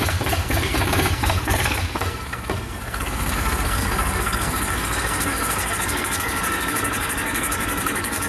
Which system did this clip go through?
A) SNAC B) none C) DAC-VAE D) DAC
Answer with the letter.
A